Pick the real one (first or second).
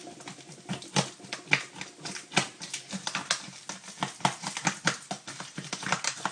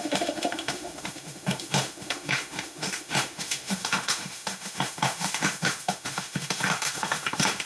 first